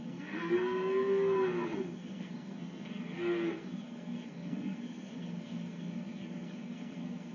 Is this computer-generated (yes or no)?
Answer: yes